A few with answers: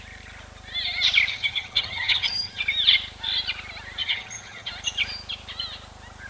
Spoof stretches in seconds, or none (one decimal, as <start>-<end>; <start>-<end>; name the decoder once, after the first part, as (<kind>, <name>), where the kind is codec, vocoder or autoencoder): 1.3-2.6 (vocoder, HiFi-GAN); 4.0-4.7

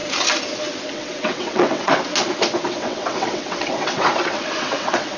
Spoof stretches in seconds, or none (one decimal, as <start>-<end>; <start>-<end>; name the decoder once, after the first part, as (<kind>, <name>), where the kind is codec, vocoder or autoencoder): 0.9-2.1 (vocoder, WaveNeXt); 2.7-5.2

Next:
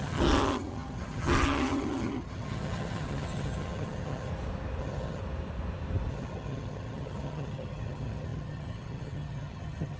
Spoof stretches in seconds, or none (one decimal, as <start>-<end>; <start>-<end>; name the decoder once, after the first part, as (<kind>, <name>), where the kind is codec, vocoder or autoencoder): 0.0-4.3 (vocoder, HiFi-GAN); 4.8-5.2; 6.1-10.0

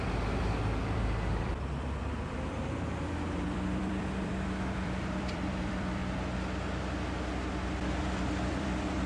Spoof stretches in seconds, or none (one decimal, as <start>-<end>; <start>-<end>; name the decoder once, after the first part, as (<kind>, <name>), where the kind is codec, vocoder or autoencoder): 0.0-6.0 (vocoder, BigVGAN v2); 8.0-9.1

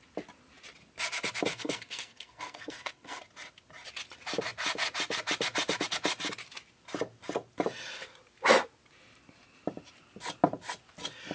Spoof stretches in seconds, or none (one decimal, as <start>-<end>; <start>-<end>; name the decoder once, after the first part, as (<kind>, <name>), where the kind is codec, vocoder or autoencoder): 1.5-3.2 (codec, SNAC)

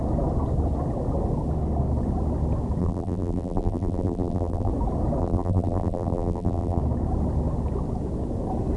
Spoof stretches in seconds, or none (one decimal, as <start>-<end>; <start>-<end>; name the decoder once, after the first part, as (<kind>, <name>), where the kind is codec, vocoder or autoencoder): 2.8-4.7 (vocoder, BigVGAN v2); 5.2-6.8